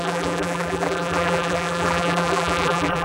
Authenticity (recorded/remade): remade